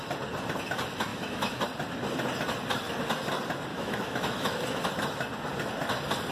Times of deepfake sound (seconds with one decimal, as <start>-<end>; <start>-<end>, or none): 1.1-1.6; 3.7-4.9